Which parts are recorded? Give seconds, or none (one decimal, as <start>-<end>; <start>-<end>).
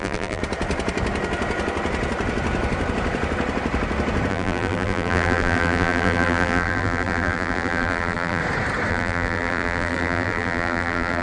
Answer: 0.4-4.3; 8.4-8.9